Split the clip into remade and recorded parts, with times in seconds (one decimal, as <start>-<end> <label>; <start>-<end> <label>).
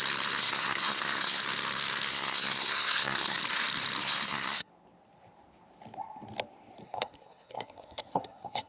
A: 0.0-0.4 recorded; 0.4-1.4 remade; 1.4-2.1 recorded; 2.1-3.4 remade; 3.4-4.0 recorded; 4.0-4.7 remade; 4.7-6.8 recorded; 6.8-8.7 remade